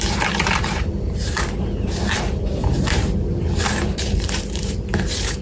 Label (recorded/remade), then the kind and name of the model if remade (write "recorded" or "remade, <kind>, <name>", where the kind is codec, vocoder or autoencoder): remade, vocoder, BigVGAN v2